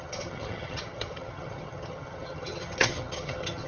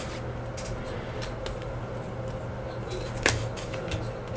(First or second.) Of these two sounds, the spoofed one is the first